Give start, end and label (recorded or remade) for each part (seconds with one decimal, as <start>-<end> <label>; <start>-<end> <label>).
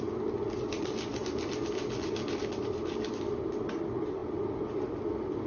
0.0-5.5 recorded